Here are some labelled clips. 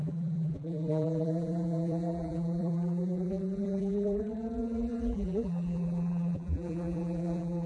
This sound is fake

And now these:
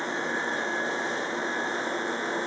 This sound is fake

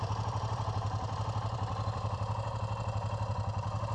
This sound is fake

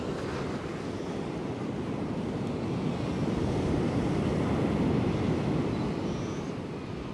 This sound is real